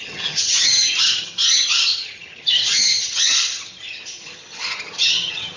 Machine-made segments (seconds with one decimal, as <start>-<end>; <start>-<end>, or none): 0.0-5.6